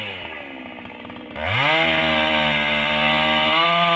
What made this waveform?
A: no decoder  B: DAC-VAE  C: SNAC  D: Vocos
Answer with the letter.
A